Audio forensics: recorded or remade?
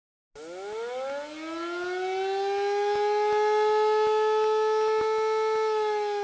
recorded